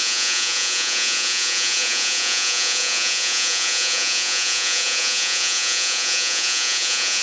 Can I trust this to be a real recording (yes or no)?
no